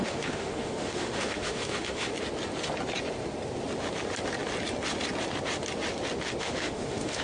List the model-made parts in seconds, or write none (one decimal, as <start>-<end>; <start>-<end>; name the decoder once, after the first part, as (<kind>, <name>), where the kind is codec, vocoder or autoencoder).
0.0-2.1 (autoencoder, DAC-VAE); 6.4-7.2